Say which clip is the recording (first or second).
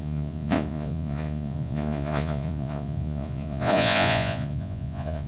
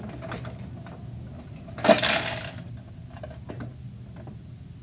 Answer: second